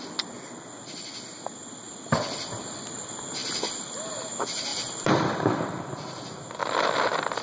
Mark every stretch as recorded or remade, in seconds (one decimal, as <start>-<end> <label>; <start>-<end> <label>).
0.0-3.4 recorded; 3.4-4.1 remade; 4.1-4.7 recorded; 4.7-5.6 remade; 5.6-6.6 recorded; 6.6-7.4 remade